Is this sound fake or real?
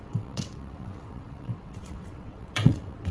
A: fake